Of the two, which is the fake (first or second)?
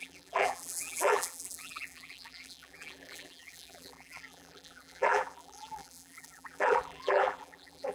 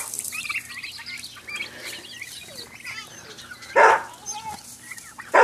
first